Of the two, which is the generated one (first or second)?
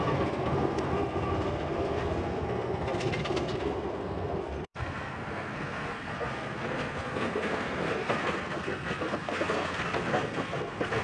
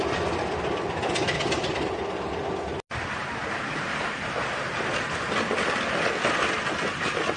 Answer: first